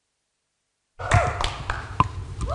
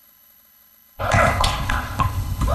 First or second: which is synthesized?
second